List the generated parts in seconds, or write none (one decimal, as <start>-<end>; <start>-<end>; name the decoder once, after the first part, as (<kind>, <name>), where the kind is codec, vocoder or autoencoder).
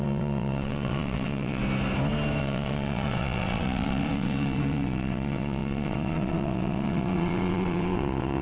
0.0-1.6 (vocoder, WaveNeXt); 2.4-8.4